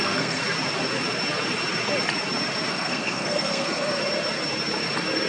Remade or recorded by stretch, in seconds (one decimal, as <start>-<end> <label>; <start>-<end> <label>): 0.0-0.4 remade; 0.4-2.7 recorded; 2.7-3.9 remade; 3.9-5.3 recorded